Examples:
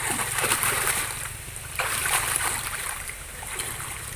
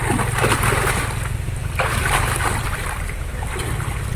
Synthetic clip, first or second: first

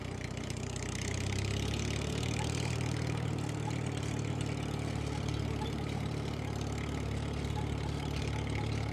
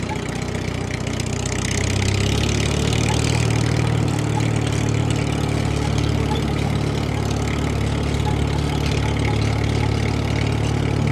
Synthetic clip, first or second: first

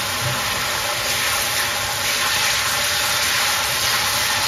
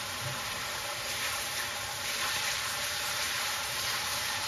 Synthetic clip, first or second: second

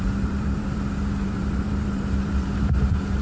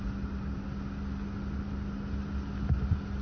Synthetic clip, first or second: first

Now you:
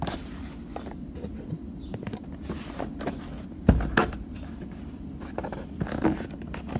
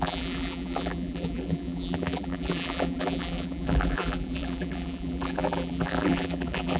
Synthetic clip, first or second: second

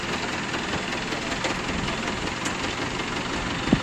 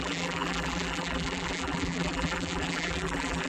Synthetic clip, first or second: second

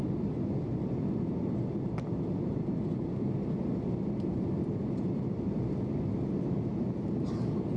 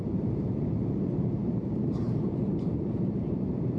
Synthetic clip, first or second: second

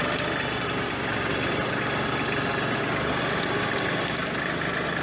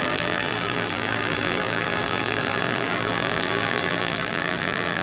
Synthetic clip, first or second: second